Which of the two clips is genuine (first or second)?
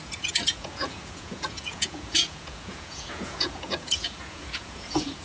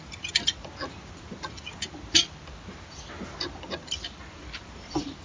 second